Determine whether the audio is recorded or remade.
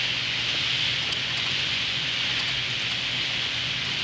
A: remade